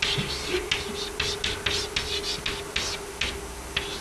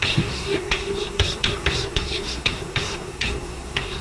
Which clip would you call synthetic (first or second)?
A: second